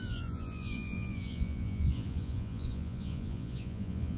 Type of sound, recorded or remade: remade